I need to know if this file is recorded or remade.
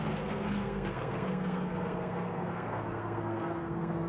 remade